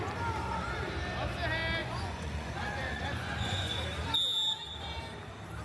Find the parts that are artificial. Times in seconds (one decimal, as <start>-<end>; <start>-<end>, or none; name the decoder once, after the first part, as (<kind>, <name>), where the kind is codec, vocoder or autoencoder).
1.8-3.8 (vocoder, Vocos)